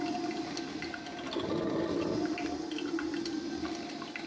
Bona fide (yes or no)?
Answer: yes